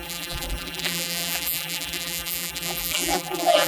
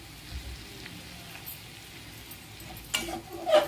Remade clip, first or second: first